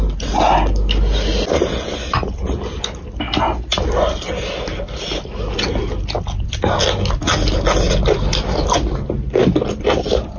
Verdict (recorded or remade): recorded